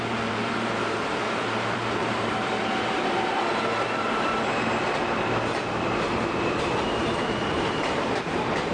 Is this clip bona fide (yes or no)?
no